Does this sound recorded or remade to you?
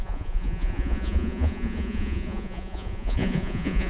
remade